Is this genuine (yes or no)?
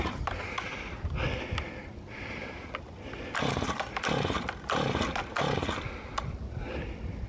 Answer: yes